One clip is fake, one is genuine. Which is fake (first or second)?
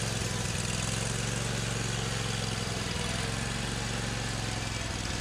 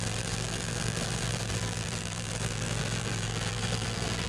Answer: second